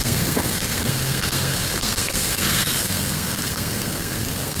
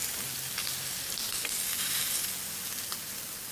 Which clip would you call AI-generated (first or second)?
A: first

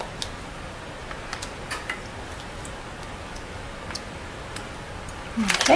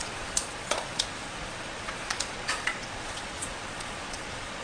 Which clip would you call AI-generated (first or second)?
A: second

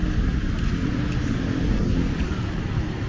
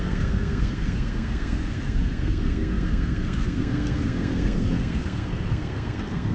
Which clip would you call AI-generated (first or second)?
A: second